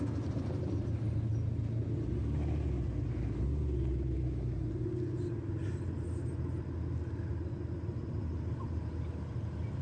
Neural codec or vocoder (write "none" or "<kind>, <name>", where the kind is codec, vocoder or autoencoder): none